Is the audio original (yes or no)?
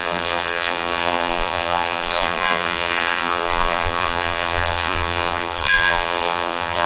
no